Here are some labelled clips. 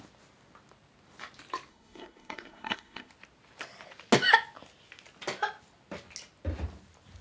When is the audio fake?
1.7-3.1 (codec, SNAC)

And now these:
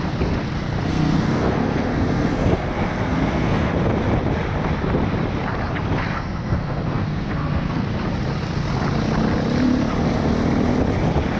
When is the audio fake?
0.9-3.7 (codec, SNAC); 6.1-7.9

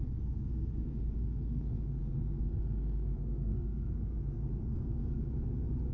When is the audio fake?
0.0-5.2 (codec, SNAC)

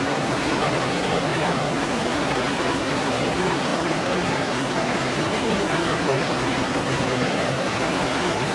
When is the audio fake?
0.0-8.5 (codec, SNAC)

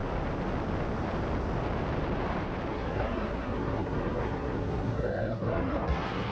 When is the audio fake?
2.7-6.3 (codec, SNAC)

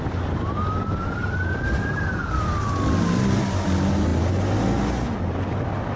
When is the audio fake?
none

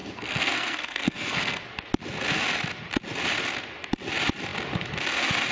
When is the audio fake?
0.0-1.6 (codec, SNAC)